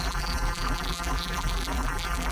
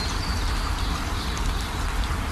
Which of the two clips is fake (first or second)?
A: first